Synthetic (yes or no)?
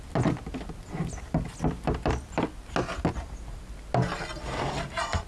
no